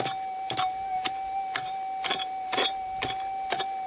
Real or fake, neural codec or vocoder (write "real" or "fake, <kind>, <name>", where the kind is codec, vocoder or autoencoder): real